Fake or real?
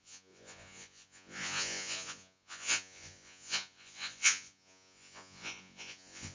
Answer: fake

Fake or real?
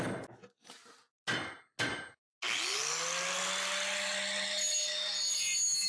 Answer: real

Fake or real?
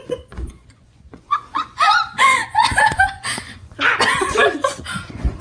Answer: fake